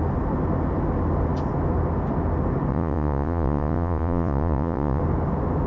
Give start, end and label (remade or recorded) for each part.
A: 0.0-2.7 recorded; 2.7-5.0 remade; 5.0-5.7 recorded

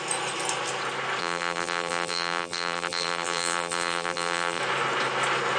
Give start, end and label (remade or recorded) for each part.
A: 0.0-1.2 recorded; 1.2-4.6 remade; 4.6-5.6 recorded

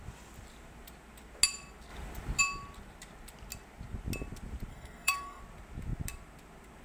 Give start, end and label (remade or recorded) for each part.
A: 0.0-4.7 recorded; 4.7-5.4 remade; 5.4-6.8 recorded